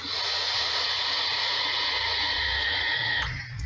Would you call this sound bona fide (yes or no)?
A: no